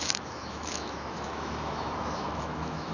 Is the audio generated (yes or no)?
yes